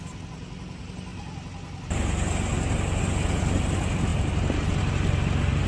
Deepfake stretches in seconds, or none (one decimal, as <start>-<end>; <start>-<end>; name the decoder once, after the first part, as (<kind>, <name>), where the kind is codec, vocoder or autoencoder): none